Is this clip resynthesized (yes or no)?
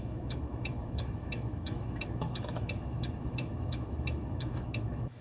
yes